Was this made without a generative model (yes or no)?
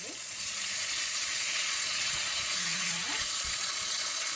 no